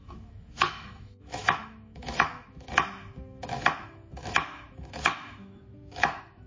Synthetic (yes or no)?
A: yes